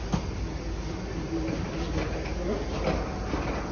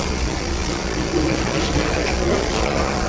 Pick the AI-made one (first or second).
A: second